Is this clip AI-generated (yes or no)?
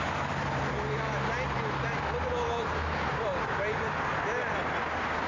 no